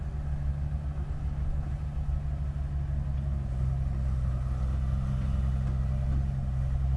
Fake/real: real